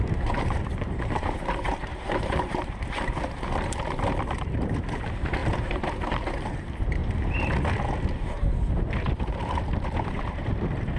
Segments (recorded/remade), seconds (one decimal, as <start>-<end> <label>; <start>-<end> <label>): 0.0-7.0 remade; 7.0-9.3 recorded; 9.3-11.0 remade